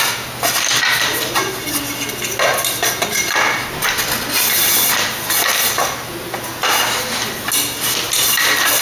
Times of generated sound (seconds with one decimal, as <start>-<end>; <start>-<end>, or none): none